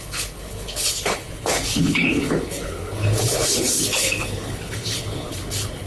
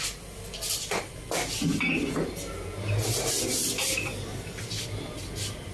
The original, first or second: second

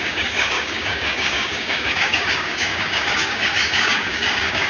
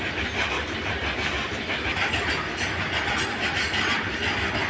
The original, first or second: second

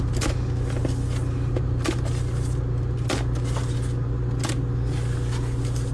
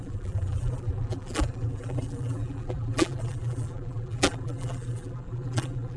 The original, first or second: first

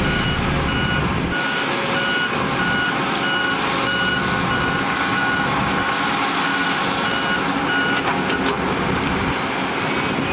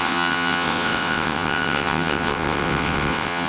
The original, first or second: first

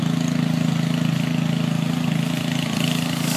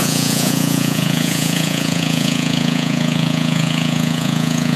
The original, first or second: first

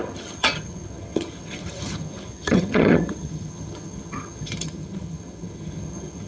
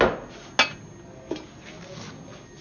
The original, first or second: second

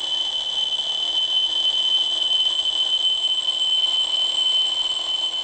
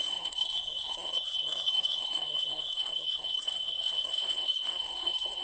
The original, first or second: first